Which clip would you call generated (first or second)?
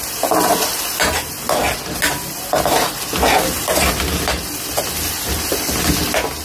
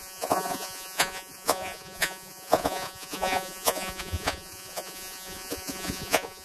second